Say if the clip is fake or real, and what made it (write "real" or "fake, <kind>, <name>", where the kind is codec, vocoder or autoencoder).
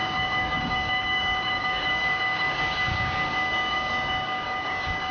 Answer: fake, codec, DAC